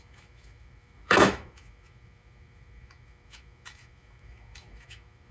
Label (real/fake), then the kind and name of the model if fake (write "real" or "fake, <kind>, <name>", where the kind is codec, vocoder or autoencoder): fake, autoencoder, DAC-VAE